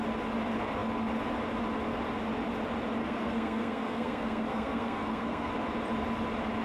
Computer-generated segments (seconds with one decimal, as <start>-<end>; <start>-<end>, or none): 3.0-5.5